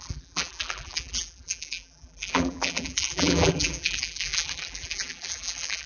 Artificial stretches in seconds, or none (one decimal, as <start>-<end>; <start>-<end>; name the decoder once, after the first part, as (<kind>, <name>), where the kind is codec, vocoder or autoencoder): 0.0-5.9 (vocoder, BigVGAN v2)